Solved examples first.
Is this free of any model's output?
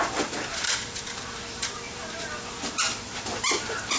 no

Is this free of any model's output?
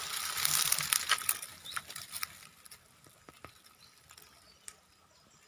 yes